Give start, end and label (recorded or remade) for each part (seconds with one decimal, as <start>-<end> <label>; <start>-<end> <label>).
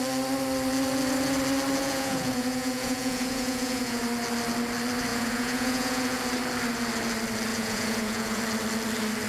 0.0-1.8 recorded; 1.8-4.0 remade; 4.0-5.1 recorded; 5.1-6.2 remade; 6.2-7.5 recorded; 7.5-8.4 remade; 8.4-9.3 recorded